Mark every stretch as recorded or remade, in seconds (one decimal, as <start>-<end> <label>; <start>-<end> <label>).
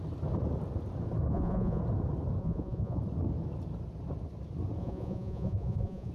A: 0.0-1.3 recorded; 1.3-1.8 remade; 1.8-2.4 recorded; 2.4-3.0 remade; 3.0-4.8 recorded; 4.8-6.1 remade